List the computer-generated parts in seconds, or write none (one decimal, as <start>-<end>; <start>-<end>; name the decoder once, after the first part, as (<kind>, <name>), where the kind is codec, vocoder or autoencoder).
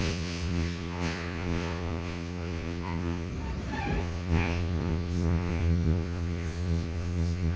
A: 0.0-3.3 (vocoder, Vocos); 4.0-7.6